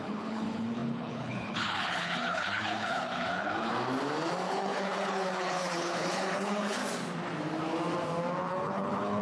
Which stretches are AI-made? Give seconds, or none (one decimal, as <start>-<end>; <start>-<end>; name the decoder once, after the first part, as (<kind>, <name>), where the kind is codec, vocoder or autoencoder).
0.0-3.7 (codec, HILCodec); 4.5-6.8; 8.5-9.2